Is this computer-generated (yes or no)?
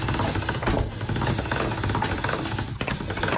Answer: no